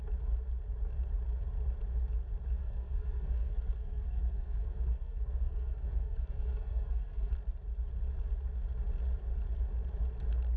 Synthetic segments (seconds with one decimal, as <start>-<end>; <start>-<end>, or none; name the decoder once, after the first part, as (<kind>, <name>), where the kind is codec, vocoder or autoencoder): 2.6-7.3 (codec, SNAC)